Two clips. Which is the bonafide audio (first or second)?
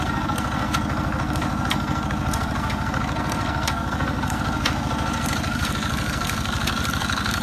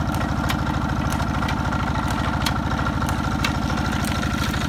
second